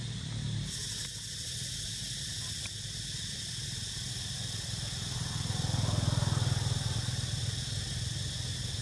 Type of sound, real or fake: real